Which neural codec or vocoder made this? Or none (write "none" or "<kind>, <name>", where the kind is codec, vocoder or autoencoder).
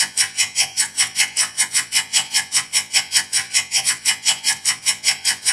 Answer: vocoder, Vocos